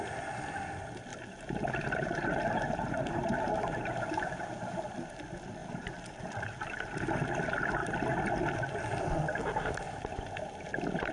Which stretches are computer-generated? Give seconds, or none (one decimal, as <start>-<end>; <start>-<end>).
1.1-4.8; 5.6-6.9